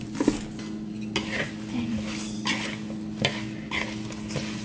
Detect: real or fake real